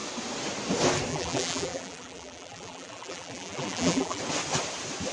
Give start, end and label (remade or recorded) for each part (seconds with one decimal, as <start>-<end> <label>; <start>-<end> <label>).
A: 0.0-1.1 recorded; 1.1-4.2 remade; 4.2-5.1 recorded